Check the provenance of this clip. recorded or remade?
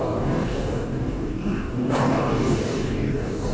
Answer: remade